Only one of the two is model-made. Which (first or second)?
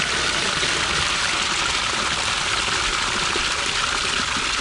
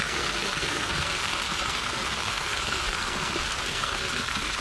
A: second